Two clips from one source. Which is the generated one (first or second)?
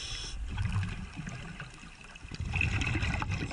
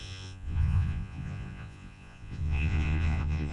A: second